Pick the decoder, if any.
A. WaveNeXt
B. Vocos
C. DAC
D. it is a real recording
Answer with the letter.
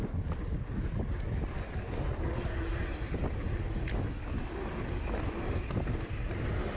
D